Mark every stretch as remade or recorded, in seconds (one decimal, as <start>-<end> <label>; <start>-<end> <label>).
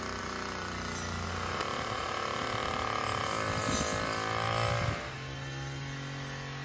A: 0.0-2.6 recorded; 2.6-3.2 remade; 3.2-6.6 recorded